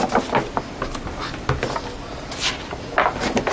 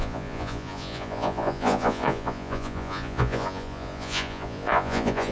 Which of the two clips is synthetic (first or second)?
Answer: second